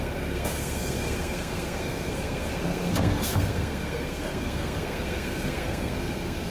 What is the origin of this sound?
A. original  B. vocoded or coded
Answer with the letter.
B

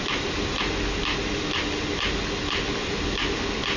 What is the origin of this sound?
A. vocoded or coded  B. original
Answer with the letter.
B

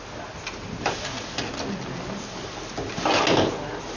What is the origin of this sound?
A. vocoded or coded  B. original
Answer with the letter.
B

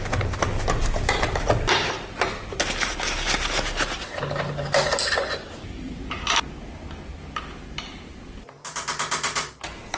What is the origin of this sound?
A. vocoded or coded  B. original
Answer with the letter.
B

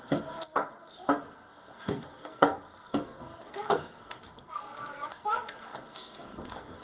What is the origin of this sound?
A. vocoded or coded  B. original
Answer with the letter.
A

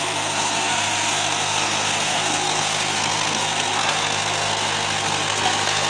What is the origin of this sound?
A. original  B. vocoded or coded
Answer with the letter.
B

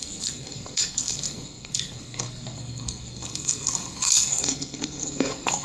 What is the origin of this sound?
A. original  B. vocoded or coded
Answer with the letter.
B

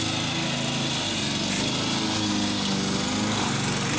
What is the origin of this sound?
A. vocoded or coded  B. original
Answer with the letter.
B